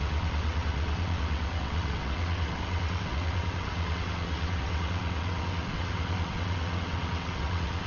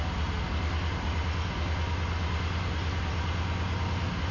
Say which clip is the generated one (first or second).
first